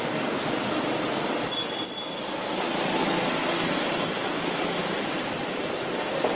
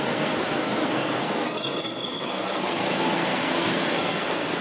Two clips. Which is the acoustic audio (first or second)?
first